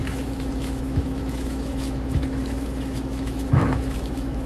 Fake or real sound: fake